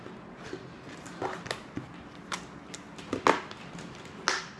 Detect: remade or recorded recorded